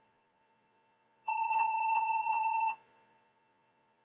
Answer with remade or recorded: remade